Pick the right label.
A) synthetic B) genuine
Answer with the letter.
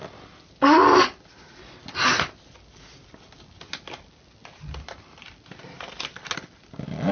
B